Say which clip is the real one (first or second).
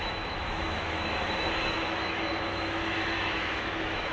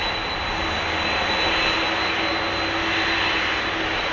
second